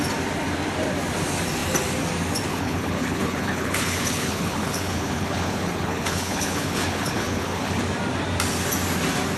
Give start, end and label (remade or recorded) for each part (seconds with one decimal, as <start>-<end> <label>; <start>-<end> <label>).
0.0-2.5 recorded; 2.5-7.8 remade; 7.8-9.4 recorded